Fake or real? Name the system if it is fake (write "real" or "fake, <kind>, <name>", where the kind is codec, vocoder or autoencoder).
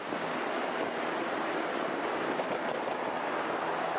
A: real